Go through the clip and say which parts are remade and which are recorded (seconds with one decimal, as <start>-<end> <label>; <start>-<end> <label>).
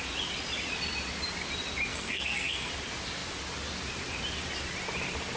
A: 0.0-1.9 recorded; 1.9-2.7 remade; 2.7-5.4 recorded